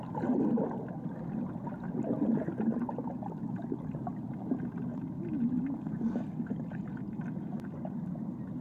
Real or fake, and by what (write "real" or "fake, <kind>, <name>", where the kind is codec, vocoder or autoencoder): real